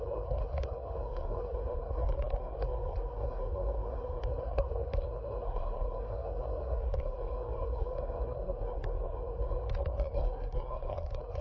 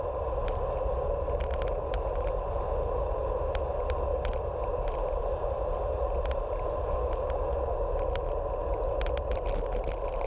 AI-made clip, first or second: first